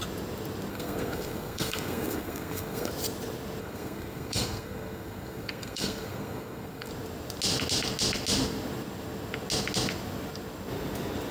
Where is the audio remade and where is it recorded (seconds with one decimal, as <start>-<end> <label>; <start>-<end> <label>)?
0.0-0.7 recorded; 0.7-2.9 remade; 2.9-3.6 recorded; 3.6-6.9 remade; 6.9-11.3 recorded